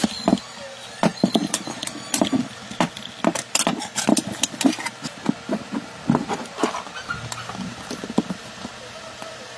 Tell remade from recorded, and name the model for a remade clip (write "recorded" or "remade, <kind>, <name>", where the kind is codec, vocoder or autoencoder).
recorded